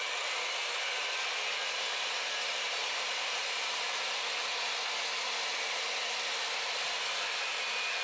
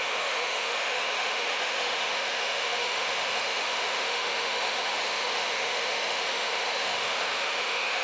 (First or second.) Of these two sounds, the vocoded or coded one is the second